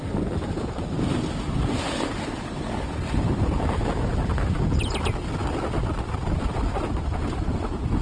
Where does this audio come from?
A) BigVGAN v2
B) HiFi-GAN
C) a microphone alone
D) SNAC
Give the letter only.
C